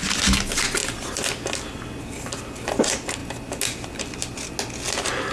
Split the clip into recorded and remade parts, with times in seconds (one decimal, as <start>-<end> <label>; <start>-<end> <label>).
0.0-5.3 recorded